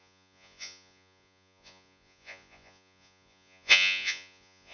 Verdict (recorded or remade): remade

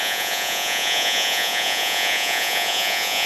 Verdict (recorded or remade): remade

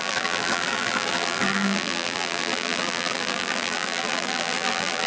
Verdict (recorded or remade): remade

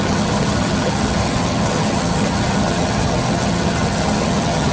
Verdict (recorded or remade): remade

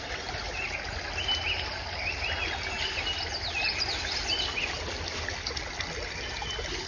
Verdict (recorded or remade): recorded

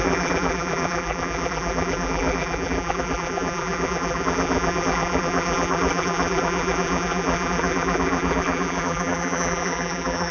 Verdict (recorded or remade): remade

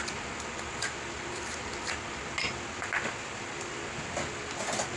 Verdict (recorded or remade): recorded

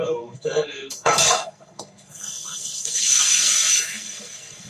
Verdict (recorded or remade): remade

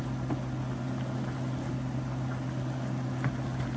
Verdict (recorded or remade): recorded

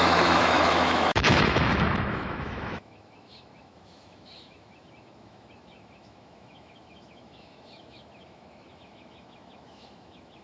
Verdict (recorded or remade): remade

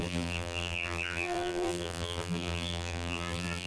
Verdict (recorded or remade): remade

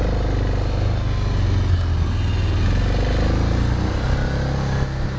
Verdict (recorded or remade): recorded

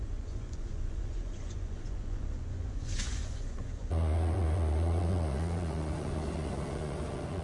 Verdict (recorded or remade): remade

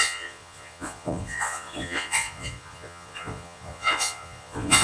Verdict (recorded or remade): remade